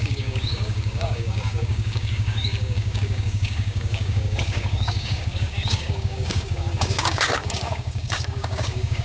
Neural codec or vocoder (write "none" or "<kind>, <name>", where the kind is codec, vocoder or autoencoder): codec, DAC